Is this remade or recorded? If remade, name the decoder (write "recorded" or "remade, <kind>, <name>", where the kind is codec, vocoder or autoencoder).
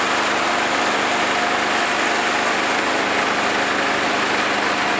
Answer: recorded